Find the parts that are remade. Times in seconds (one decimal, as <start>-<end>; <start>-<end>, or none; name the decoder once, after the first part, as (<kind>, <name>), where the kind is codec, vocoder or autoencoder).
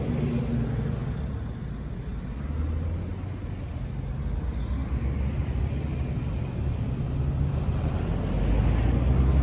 none